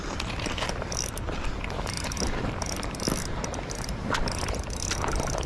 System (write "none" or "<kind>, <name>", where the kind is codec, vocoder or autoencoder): none